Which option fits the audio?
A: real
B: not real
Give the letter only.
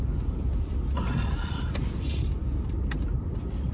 A